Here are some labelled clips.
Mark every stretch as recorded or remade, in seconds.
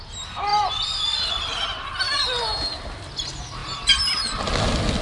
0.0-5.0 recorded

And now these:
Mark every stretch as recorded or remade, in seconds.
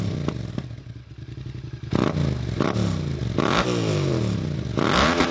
0.0-5.3 recorded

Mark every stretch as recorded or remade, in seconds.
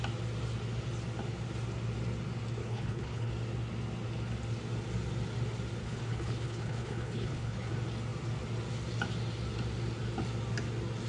0.0-2.6 recorded; 2.6-3.3 remade; 3.3-5.8 recorded; 5.8-7.7 remade; 7.7-11.1 recorded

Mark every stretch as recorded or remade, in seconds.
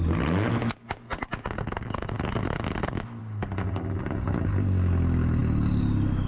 0.0-6.3 recorded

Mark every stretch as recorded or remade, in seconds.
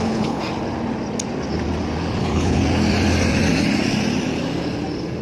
0.0-0.4 remade; 0.4-2.2 recorded; 2.2-2.6 remade; 2.6-5.2 recorded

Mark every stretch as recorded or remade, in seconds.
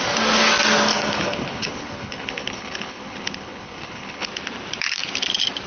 0.0-0.9 recorded; 0.9-4.3 remade; 4.3-5.7 recorded